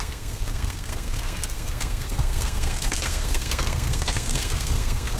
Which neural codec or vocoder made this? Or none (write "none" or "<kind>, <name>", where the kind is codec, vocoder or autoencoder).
codec, SNAC